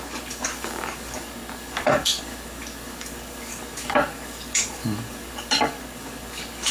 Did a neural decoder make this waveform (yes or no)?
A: yes